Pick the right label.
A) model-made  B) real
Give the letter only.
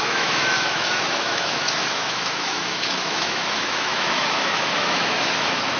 A